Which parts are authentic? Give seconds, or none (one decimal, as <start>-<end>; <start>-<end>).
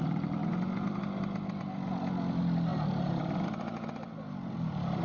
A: 0.0-5.0